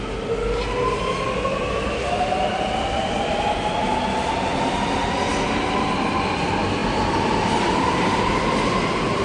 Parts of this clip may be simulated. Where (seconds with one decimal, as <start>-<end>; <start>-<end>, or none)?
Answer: none